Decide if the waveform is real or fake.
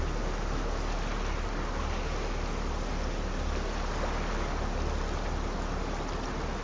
real